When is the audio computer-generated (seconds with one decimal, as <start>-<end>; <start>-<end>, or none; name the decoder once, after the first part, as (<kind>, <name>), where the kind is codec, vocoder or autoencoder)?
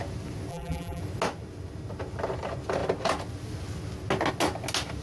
0.5-1.0 (vocoder, BigVGAN v2)